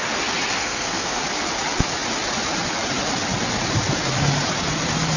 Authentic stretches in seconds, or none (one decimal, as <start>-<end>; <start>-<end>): 0.0-0.6; 1.2-5.2